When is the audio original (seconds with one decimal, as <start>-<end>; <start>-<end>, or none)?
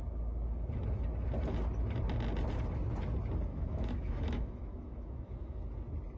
0.0-3.5; 5.6-6.2